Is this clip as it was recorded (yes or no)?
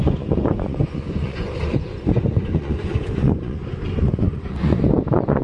no